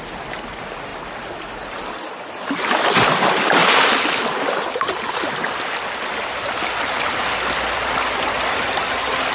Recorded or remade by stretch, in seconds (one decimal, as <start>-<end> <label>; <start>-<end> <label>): 0.0-9.3 recorded